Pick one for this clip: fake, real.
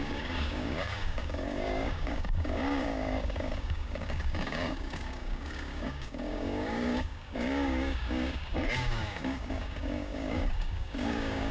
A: fake